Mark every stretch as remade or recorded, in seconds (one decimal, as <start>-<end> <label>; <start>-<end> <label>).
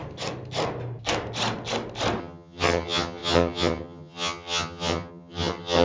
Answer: 0.0-2.2 recorded; 2.2-5.8 remade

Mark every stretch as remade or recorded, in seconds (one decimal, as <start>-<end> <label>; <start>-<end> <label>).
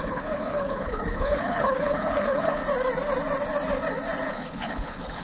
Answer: 0.0-2.6 remade; 2.6-4.3 recorded; 4.3-5.2 remade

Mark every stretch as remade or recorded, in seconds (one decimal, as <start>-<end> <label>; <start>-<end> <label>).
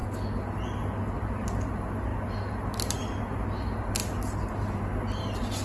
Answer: 0.0-5.6 recorded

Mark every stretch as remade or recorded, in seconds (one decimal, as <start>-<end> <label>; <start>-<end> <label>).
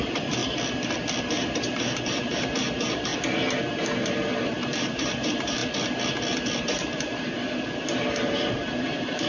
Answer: 0.0-0.4 remade; 0.4-1.2 recorded; 1.2-5.6 remade; 5.6-6.6 recorded; 6.6-9.3 remade